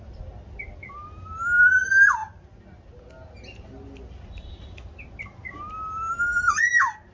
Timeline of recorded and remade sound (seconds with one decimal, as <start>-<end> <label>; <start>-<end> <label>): 0.0-7.1 recorded